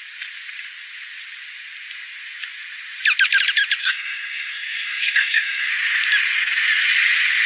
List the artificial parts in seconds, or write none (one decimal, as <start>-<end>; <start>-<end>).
3.8-5.7